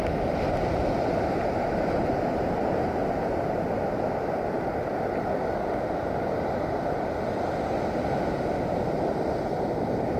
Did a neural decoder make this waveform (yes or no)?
no